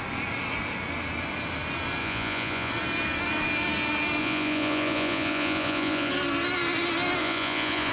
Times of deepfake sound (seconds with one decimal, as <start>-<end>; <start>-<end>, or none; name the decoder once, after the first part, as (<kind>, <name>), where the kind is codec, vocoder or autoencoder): 2.0-2.7 (vocoder, Vocos); 4.2-6.1; 7.2-7.9